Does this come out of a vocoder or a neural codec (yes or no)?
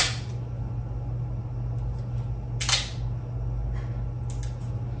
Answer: no